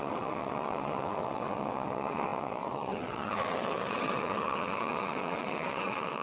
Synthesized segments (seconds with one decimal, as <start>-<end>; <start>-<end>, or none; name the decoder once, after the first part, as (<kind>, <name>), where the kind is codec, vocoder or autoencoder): 0.0-6.2 (vocoder, WaveNeXt)